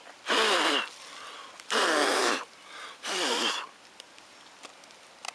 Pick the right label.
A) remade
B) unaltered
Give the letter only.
B